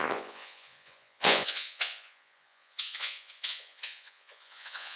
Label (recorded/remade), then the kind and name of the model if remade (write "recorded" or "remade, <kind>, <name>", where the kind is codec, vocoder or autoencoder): remade, vocoder, Vocos